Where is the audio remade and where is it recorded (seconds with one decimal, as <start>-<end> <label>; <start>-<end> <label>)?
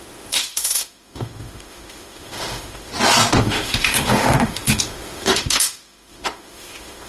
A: 0.0-2.9 remade; 2.9-3.4 recorded; 3.4-7.1 remade